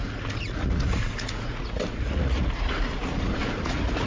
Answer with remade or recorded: remade